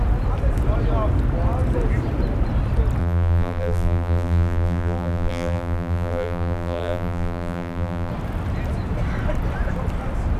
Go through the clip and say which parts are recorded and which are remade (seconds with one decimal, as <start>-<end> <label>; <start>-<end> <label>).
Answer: 0.0-3.0 recorded; 3.0-8.1 remade; 8.1-10.4 recorded